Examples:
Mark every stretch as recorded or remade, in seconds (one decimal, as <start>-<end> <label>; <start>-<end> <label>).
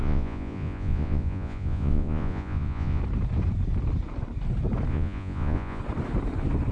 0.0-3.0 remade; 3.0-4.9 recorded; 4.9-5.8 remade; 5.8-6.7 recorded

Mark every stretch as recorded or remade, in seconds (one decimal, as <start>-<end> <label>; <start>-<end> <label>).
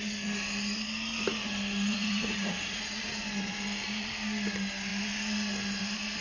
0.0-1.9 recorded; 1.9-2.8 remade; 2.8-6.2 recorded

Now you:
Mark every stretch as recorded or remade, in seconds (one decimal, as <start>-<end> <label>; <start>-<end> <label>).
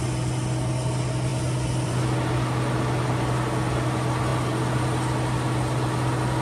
0.0-6.4 recorded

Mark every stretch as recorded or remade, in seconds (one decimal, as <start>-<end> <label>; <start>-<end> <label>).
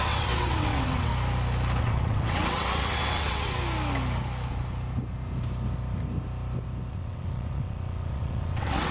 0.0-1.1 remade; 1.1-1.8 recorded; 1.8-3.6 remade; 3.6-6.9 recorded; 6.9-8.9 remade